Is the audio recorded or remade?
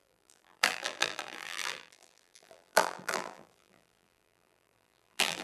remade